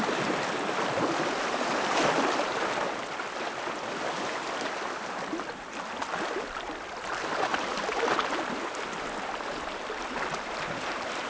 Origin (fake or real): real